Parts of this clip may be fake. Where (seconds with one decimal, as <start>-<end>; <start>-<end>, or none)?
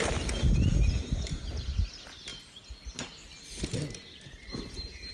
none